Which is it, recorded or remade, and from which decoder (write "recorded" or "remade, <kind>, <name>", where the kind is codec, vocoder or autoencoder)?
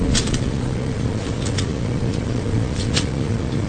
remade, vocoder, Vocos